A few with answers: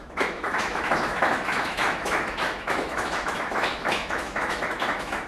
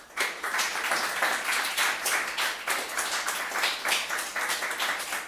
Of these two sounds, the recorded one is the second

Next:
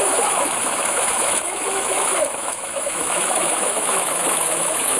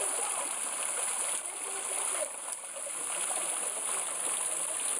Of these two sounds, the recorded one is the second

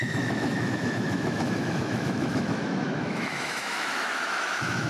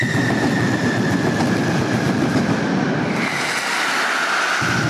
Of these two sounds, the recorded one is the second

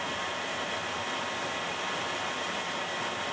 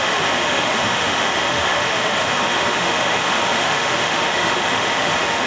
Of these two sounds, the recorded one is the first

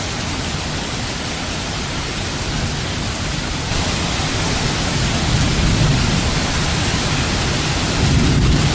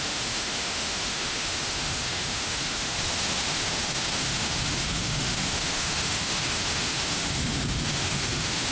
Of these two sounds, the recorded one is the first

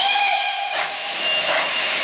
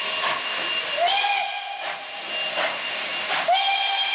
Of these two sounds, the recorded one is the second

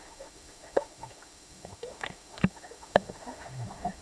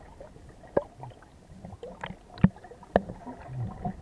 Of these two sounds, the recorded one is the second